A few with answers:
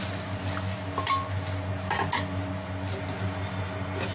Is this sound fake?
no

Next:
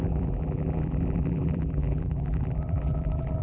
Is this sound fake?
yes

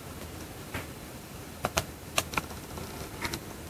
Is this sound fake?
no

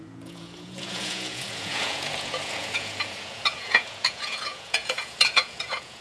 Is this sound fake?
yes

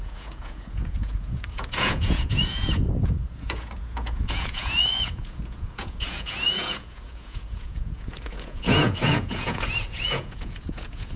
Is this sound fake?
yes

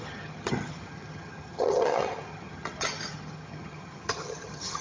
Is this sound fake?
yes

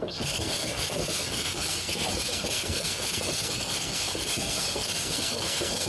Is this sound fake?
yes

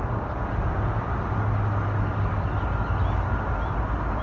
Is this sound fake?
no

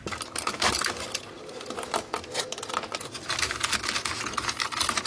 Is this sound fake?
no